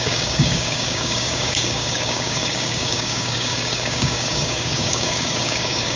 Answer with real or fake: fake